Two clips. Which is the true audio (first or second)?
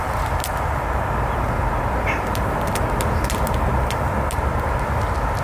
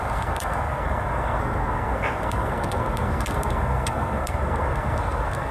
first